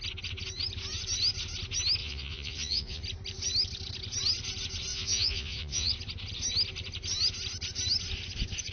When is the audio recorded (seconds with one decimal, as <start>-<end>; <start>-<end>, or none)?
0.0-2.0; 3.0-4.9; 5.9-8.7